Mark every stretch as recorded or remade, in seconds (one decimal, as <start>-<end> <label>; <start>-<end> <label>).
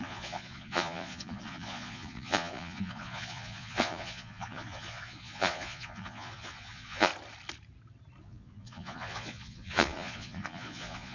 0.0-7.1 remade; 7.1-8.2 recorded; 8.2-11.1 remade